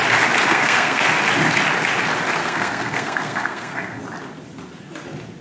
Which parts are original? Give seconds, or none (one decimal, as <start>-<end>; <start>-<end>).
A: 0.0-0.5; 1.0-2.4; 4.0-5.4